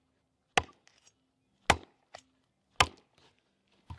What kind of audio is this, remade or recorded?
recorded